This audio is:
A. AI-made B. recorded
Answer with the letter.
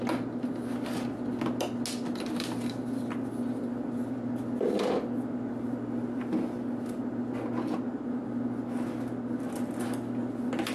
B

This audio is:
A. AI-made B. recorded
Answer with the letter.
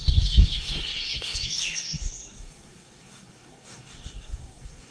A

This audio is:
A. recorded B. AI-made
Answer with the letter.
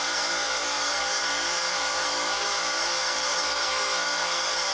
B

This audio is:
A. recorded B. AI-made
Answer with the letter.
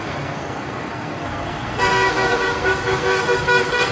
B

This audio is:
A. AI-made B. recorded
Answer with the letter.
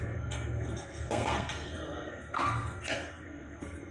A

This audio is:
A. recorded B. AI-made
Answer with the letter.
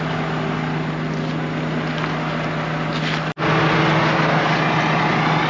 A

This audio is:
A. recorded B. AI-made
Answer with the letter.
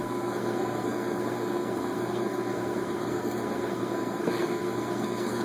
B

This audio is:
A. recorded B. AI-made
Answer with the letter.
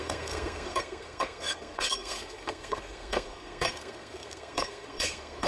B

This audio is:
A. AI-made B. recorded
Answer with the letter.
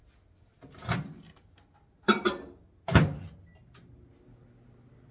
B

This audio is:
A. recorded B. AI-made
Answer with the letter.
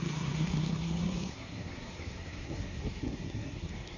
B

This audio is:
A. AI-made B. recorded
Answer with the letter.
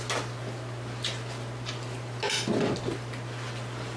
B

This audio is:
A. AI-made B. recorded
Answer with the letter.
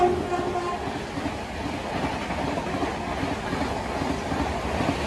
B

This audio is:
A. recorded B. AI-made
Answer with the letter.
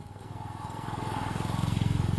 B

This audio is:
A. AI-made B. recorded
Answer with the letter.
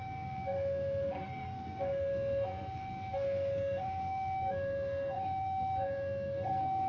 A